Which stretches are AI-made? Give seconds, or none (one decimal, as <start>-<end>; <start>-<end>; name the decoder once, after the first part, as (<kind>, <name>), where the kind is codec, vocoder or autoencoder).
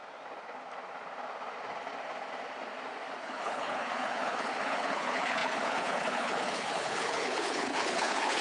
3.2-8.4 (codec, HILCodec)